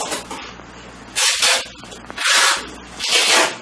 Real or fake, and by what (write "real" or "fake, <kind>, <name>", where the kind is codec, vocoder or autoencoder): real